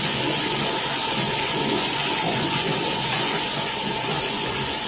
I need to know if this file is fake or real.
fake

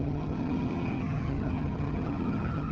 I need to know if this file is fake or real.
fake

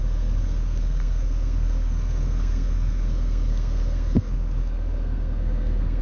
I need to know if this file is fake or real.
fake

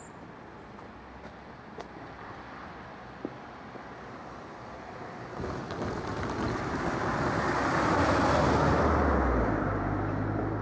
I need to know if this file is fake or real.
real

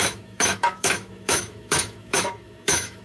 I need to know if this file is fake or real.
fake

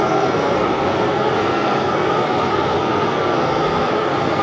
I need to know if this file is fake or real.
fake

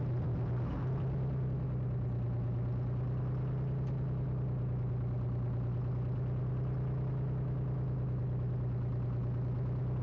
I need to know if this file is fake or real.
real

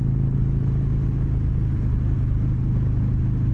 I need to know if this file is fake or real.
real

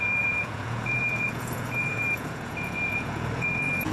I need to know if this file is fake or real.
fake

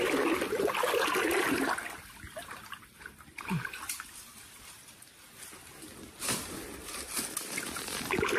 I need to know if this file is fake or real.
real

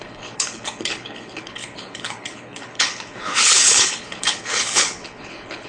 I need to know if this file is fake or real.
fake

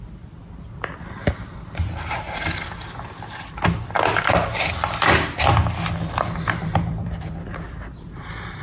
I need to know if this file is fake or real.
fake